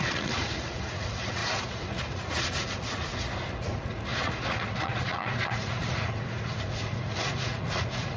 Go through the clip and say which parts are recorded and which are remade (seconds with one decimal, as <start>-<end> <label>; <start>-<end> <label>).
0.0-3.1 remade; 3.1-3.6 recorded; 3.6-8.2 remade